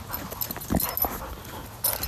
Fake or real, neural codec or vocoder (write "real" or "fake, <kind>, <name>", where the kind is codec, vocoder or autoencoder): real